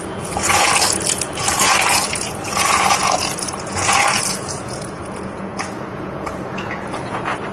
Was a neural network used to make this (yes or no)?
yes